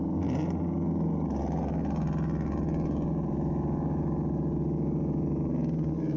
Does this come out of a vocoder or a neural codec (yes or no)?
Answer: no